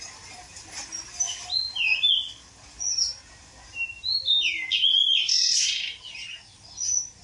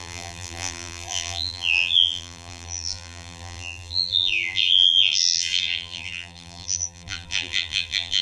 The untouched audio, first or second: first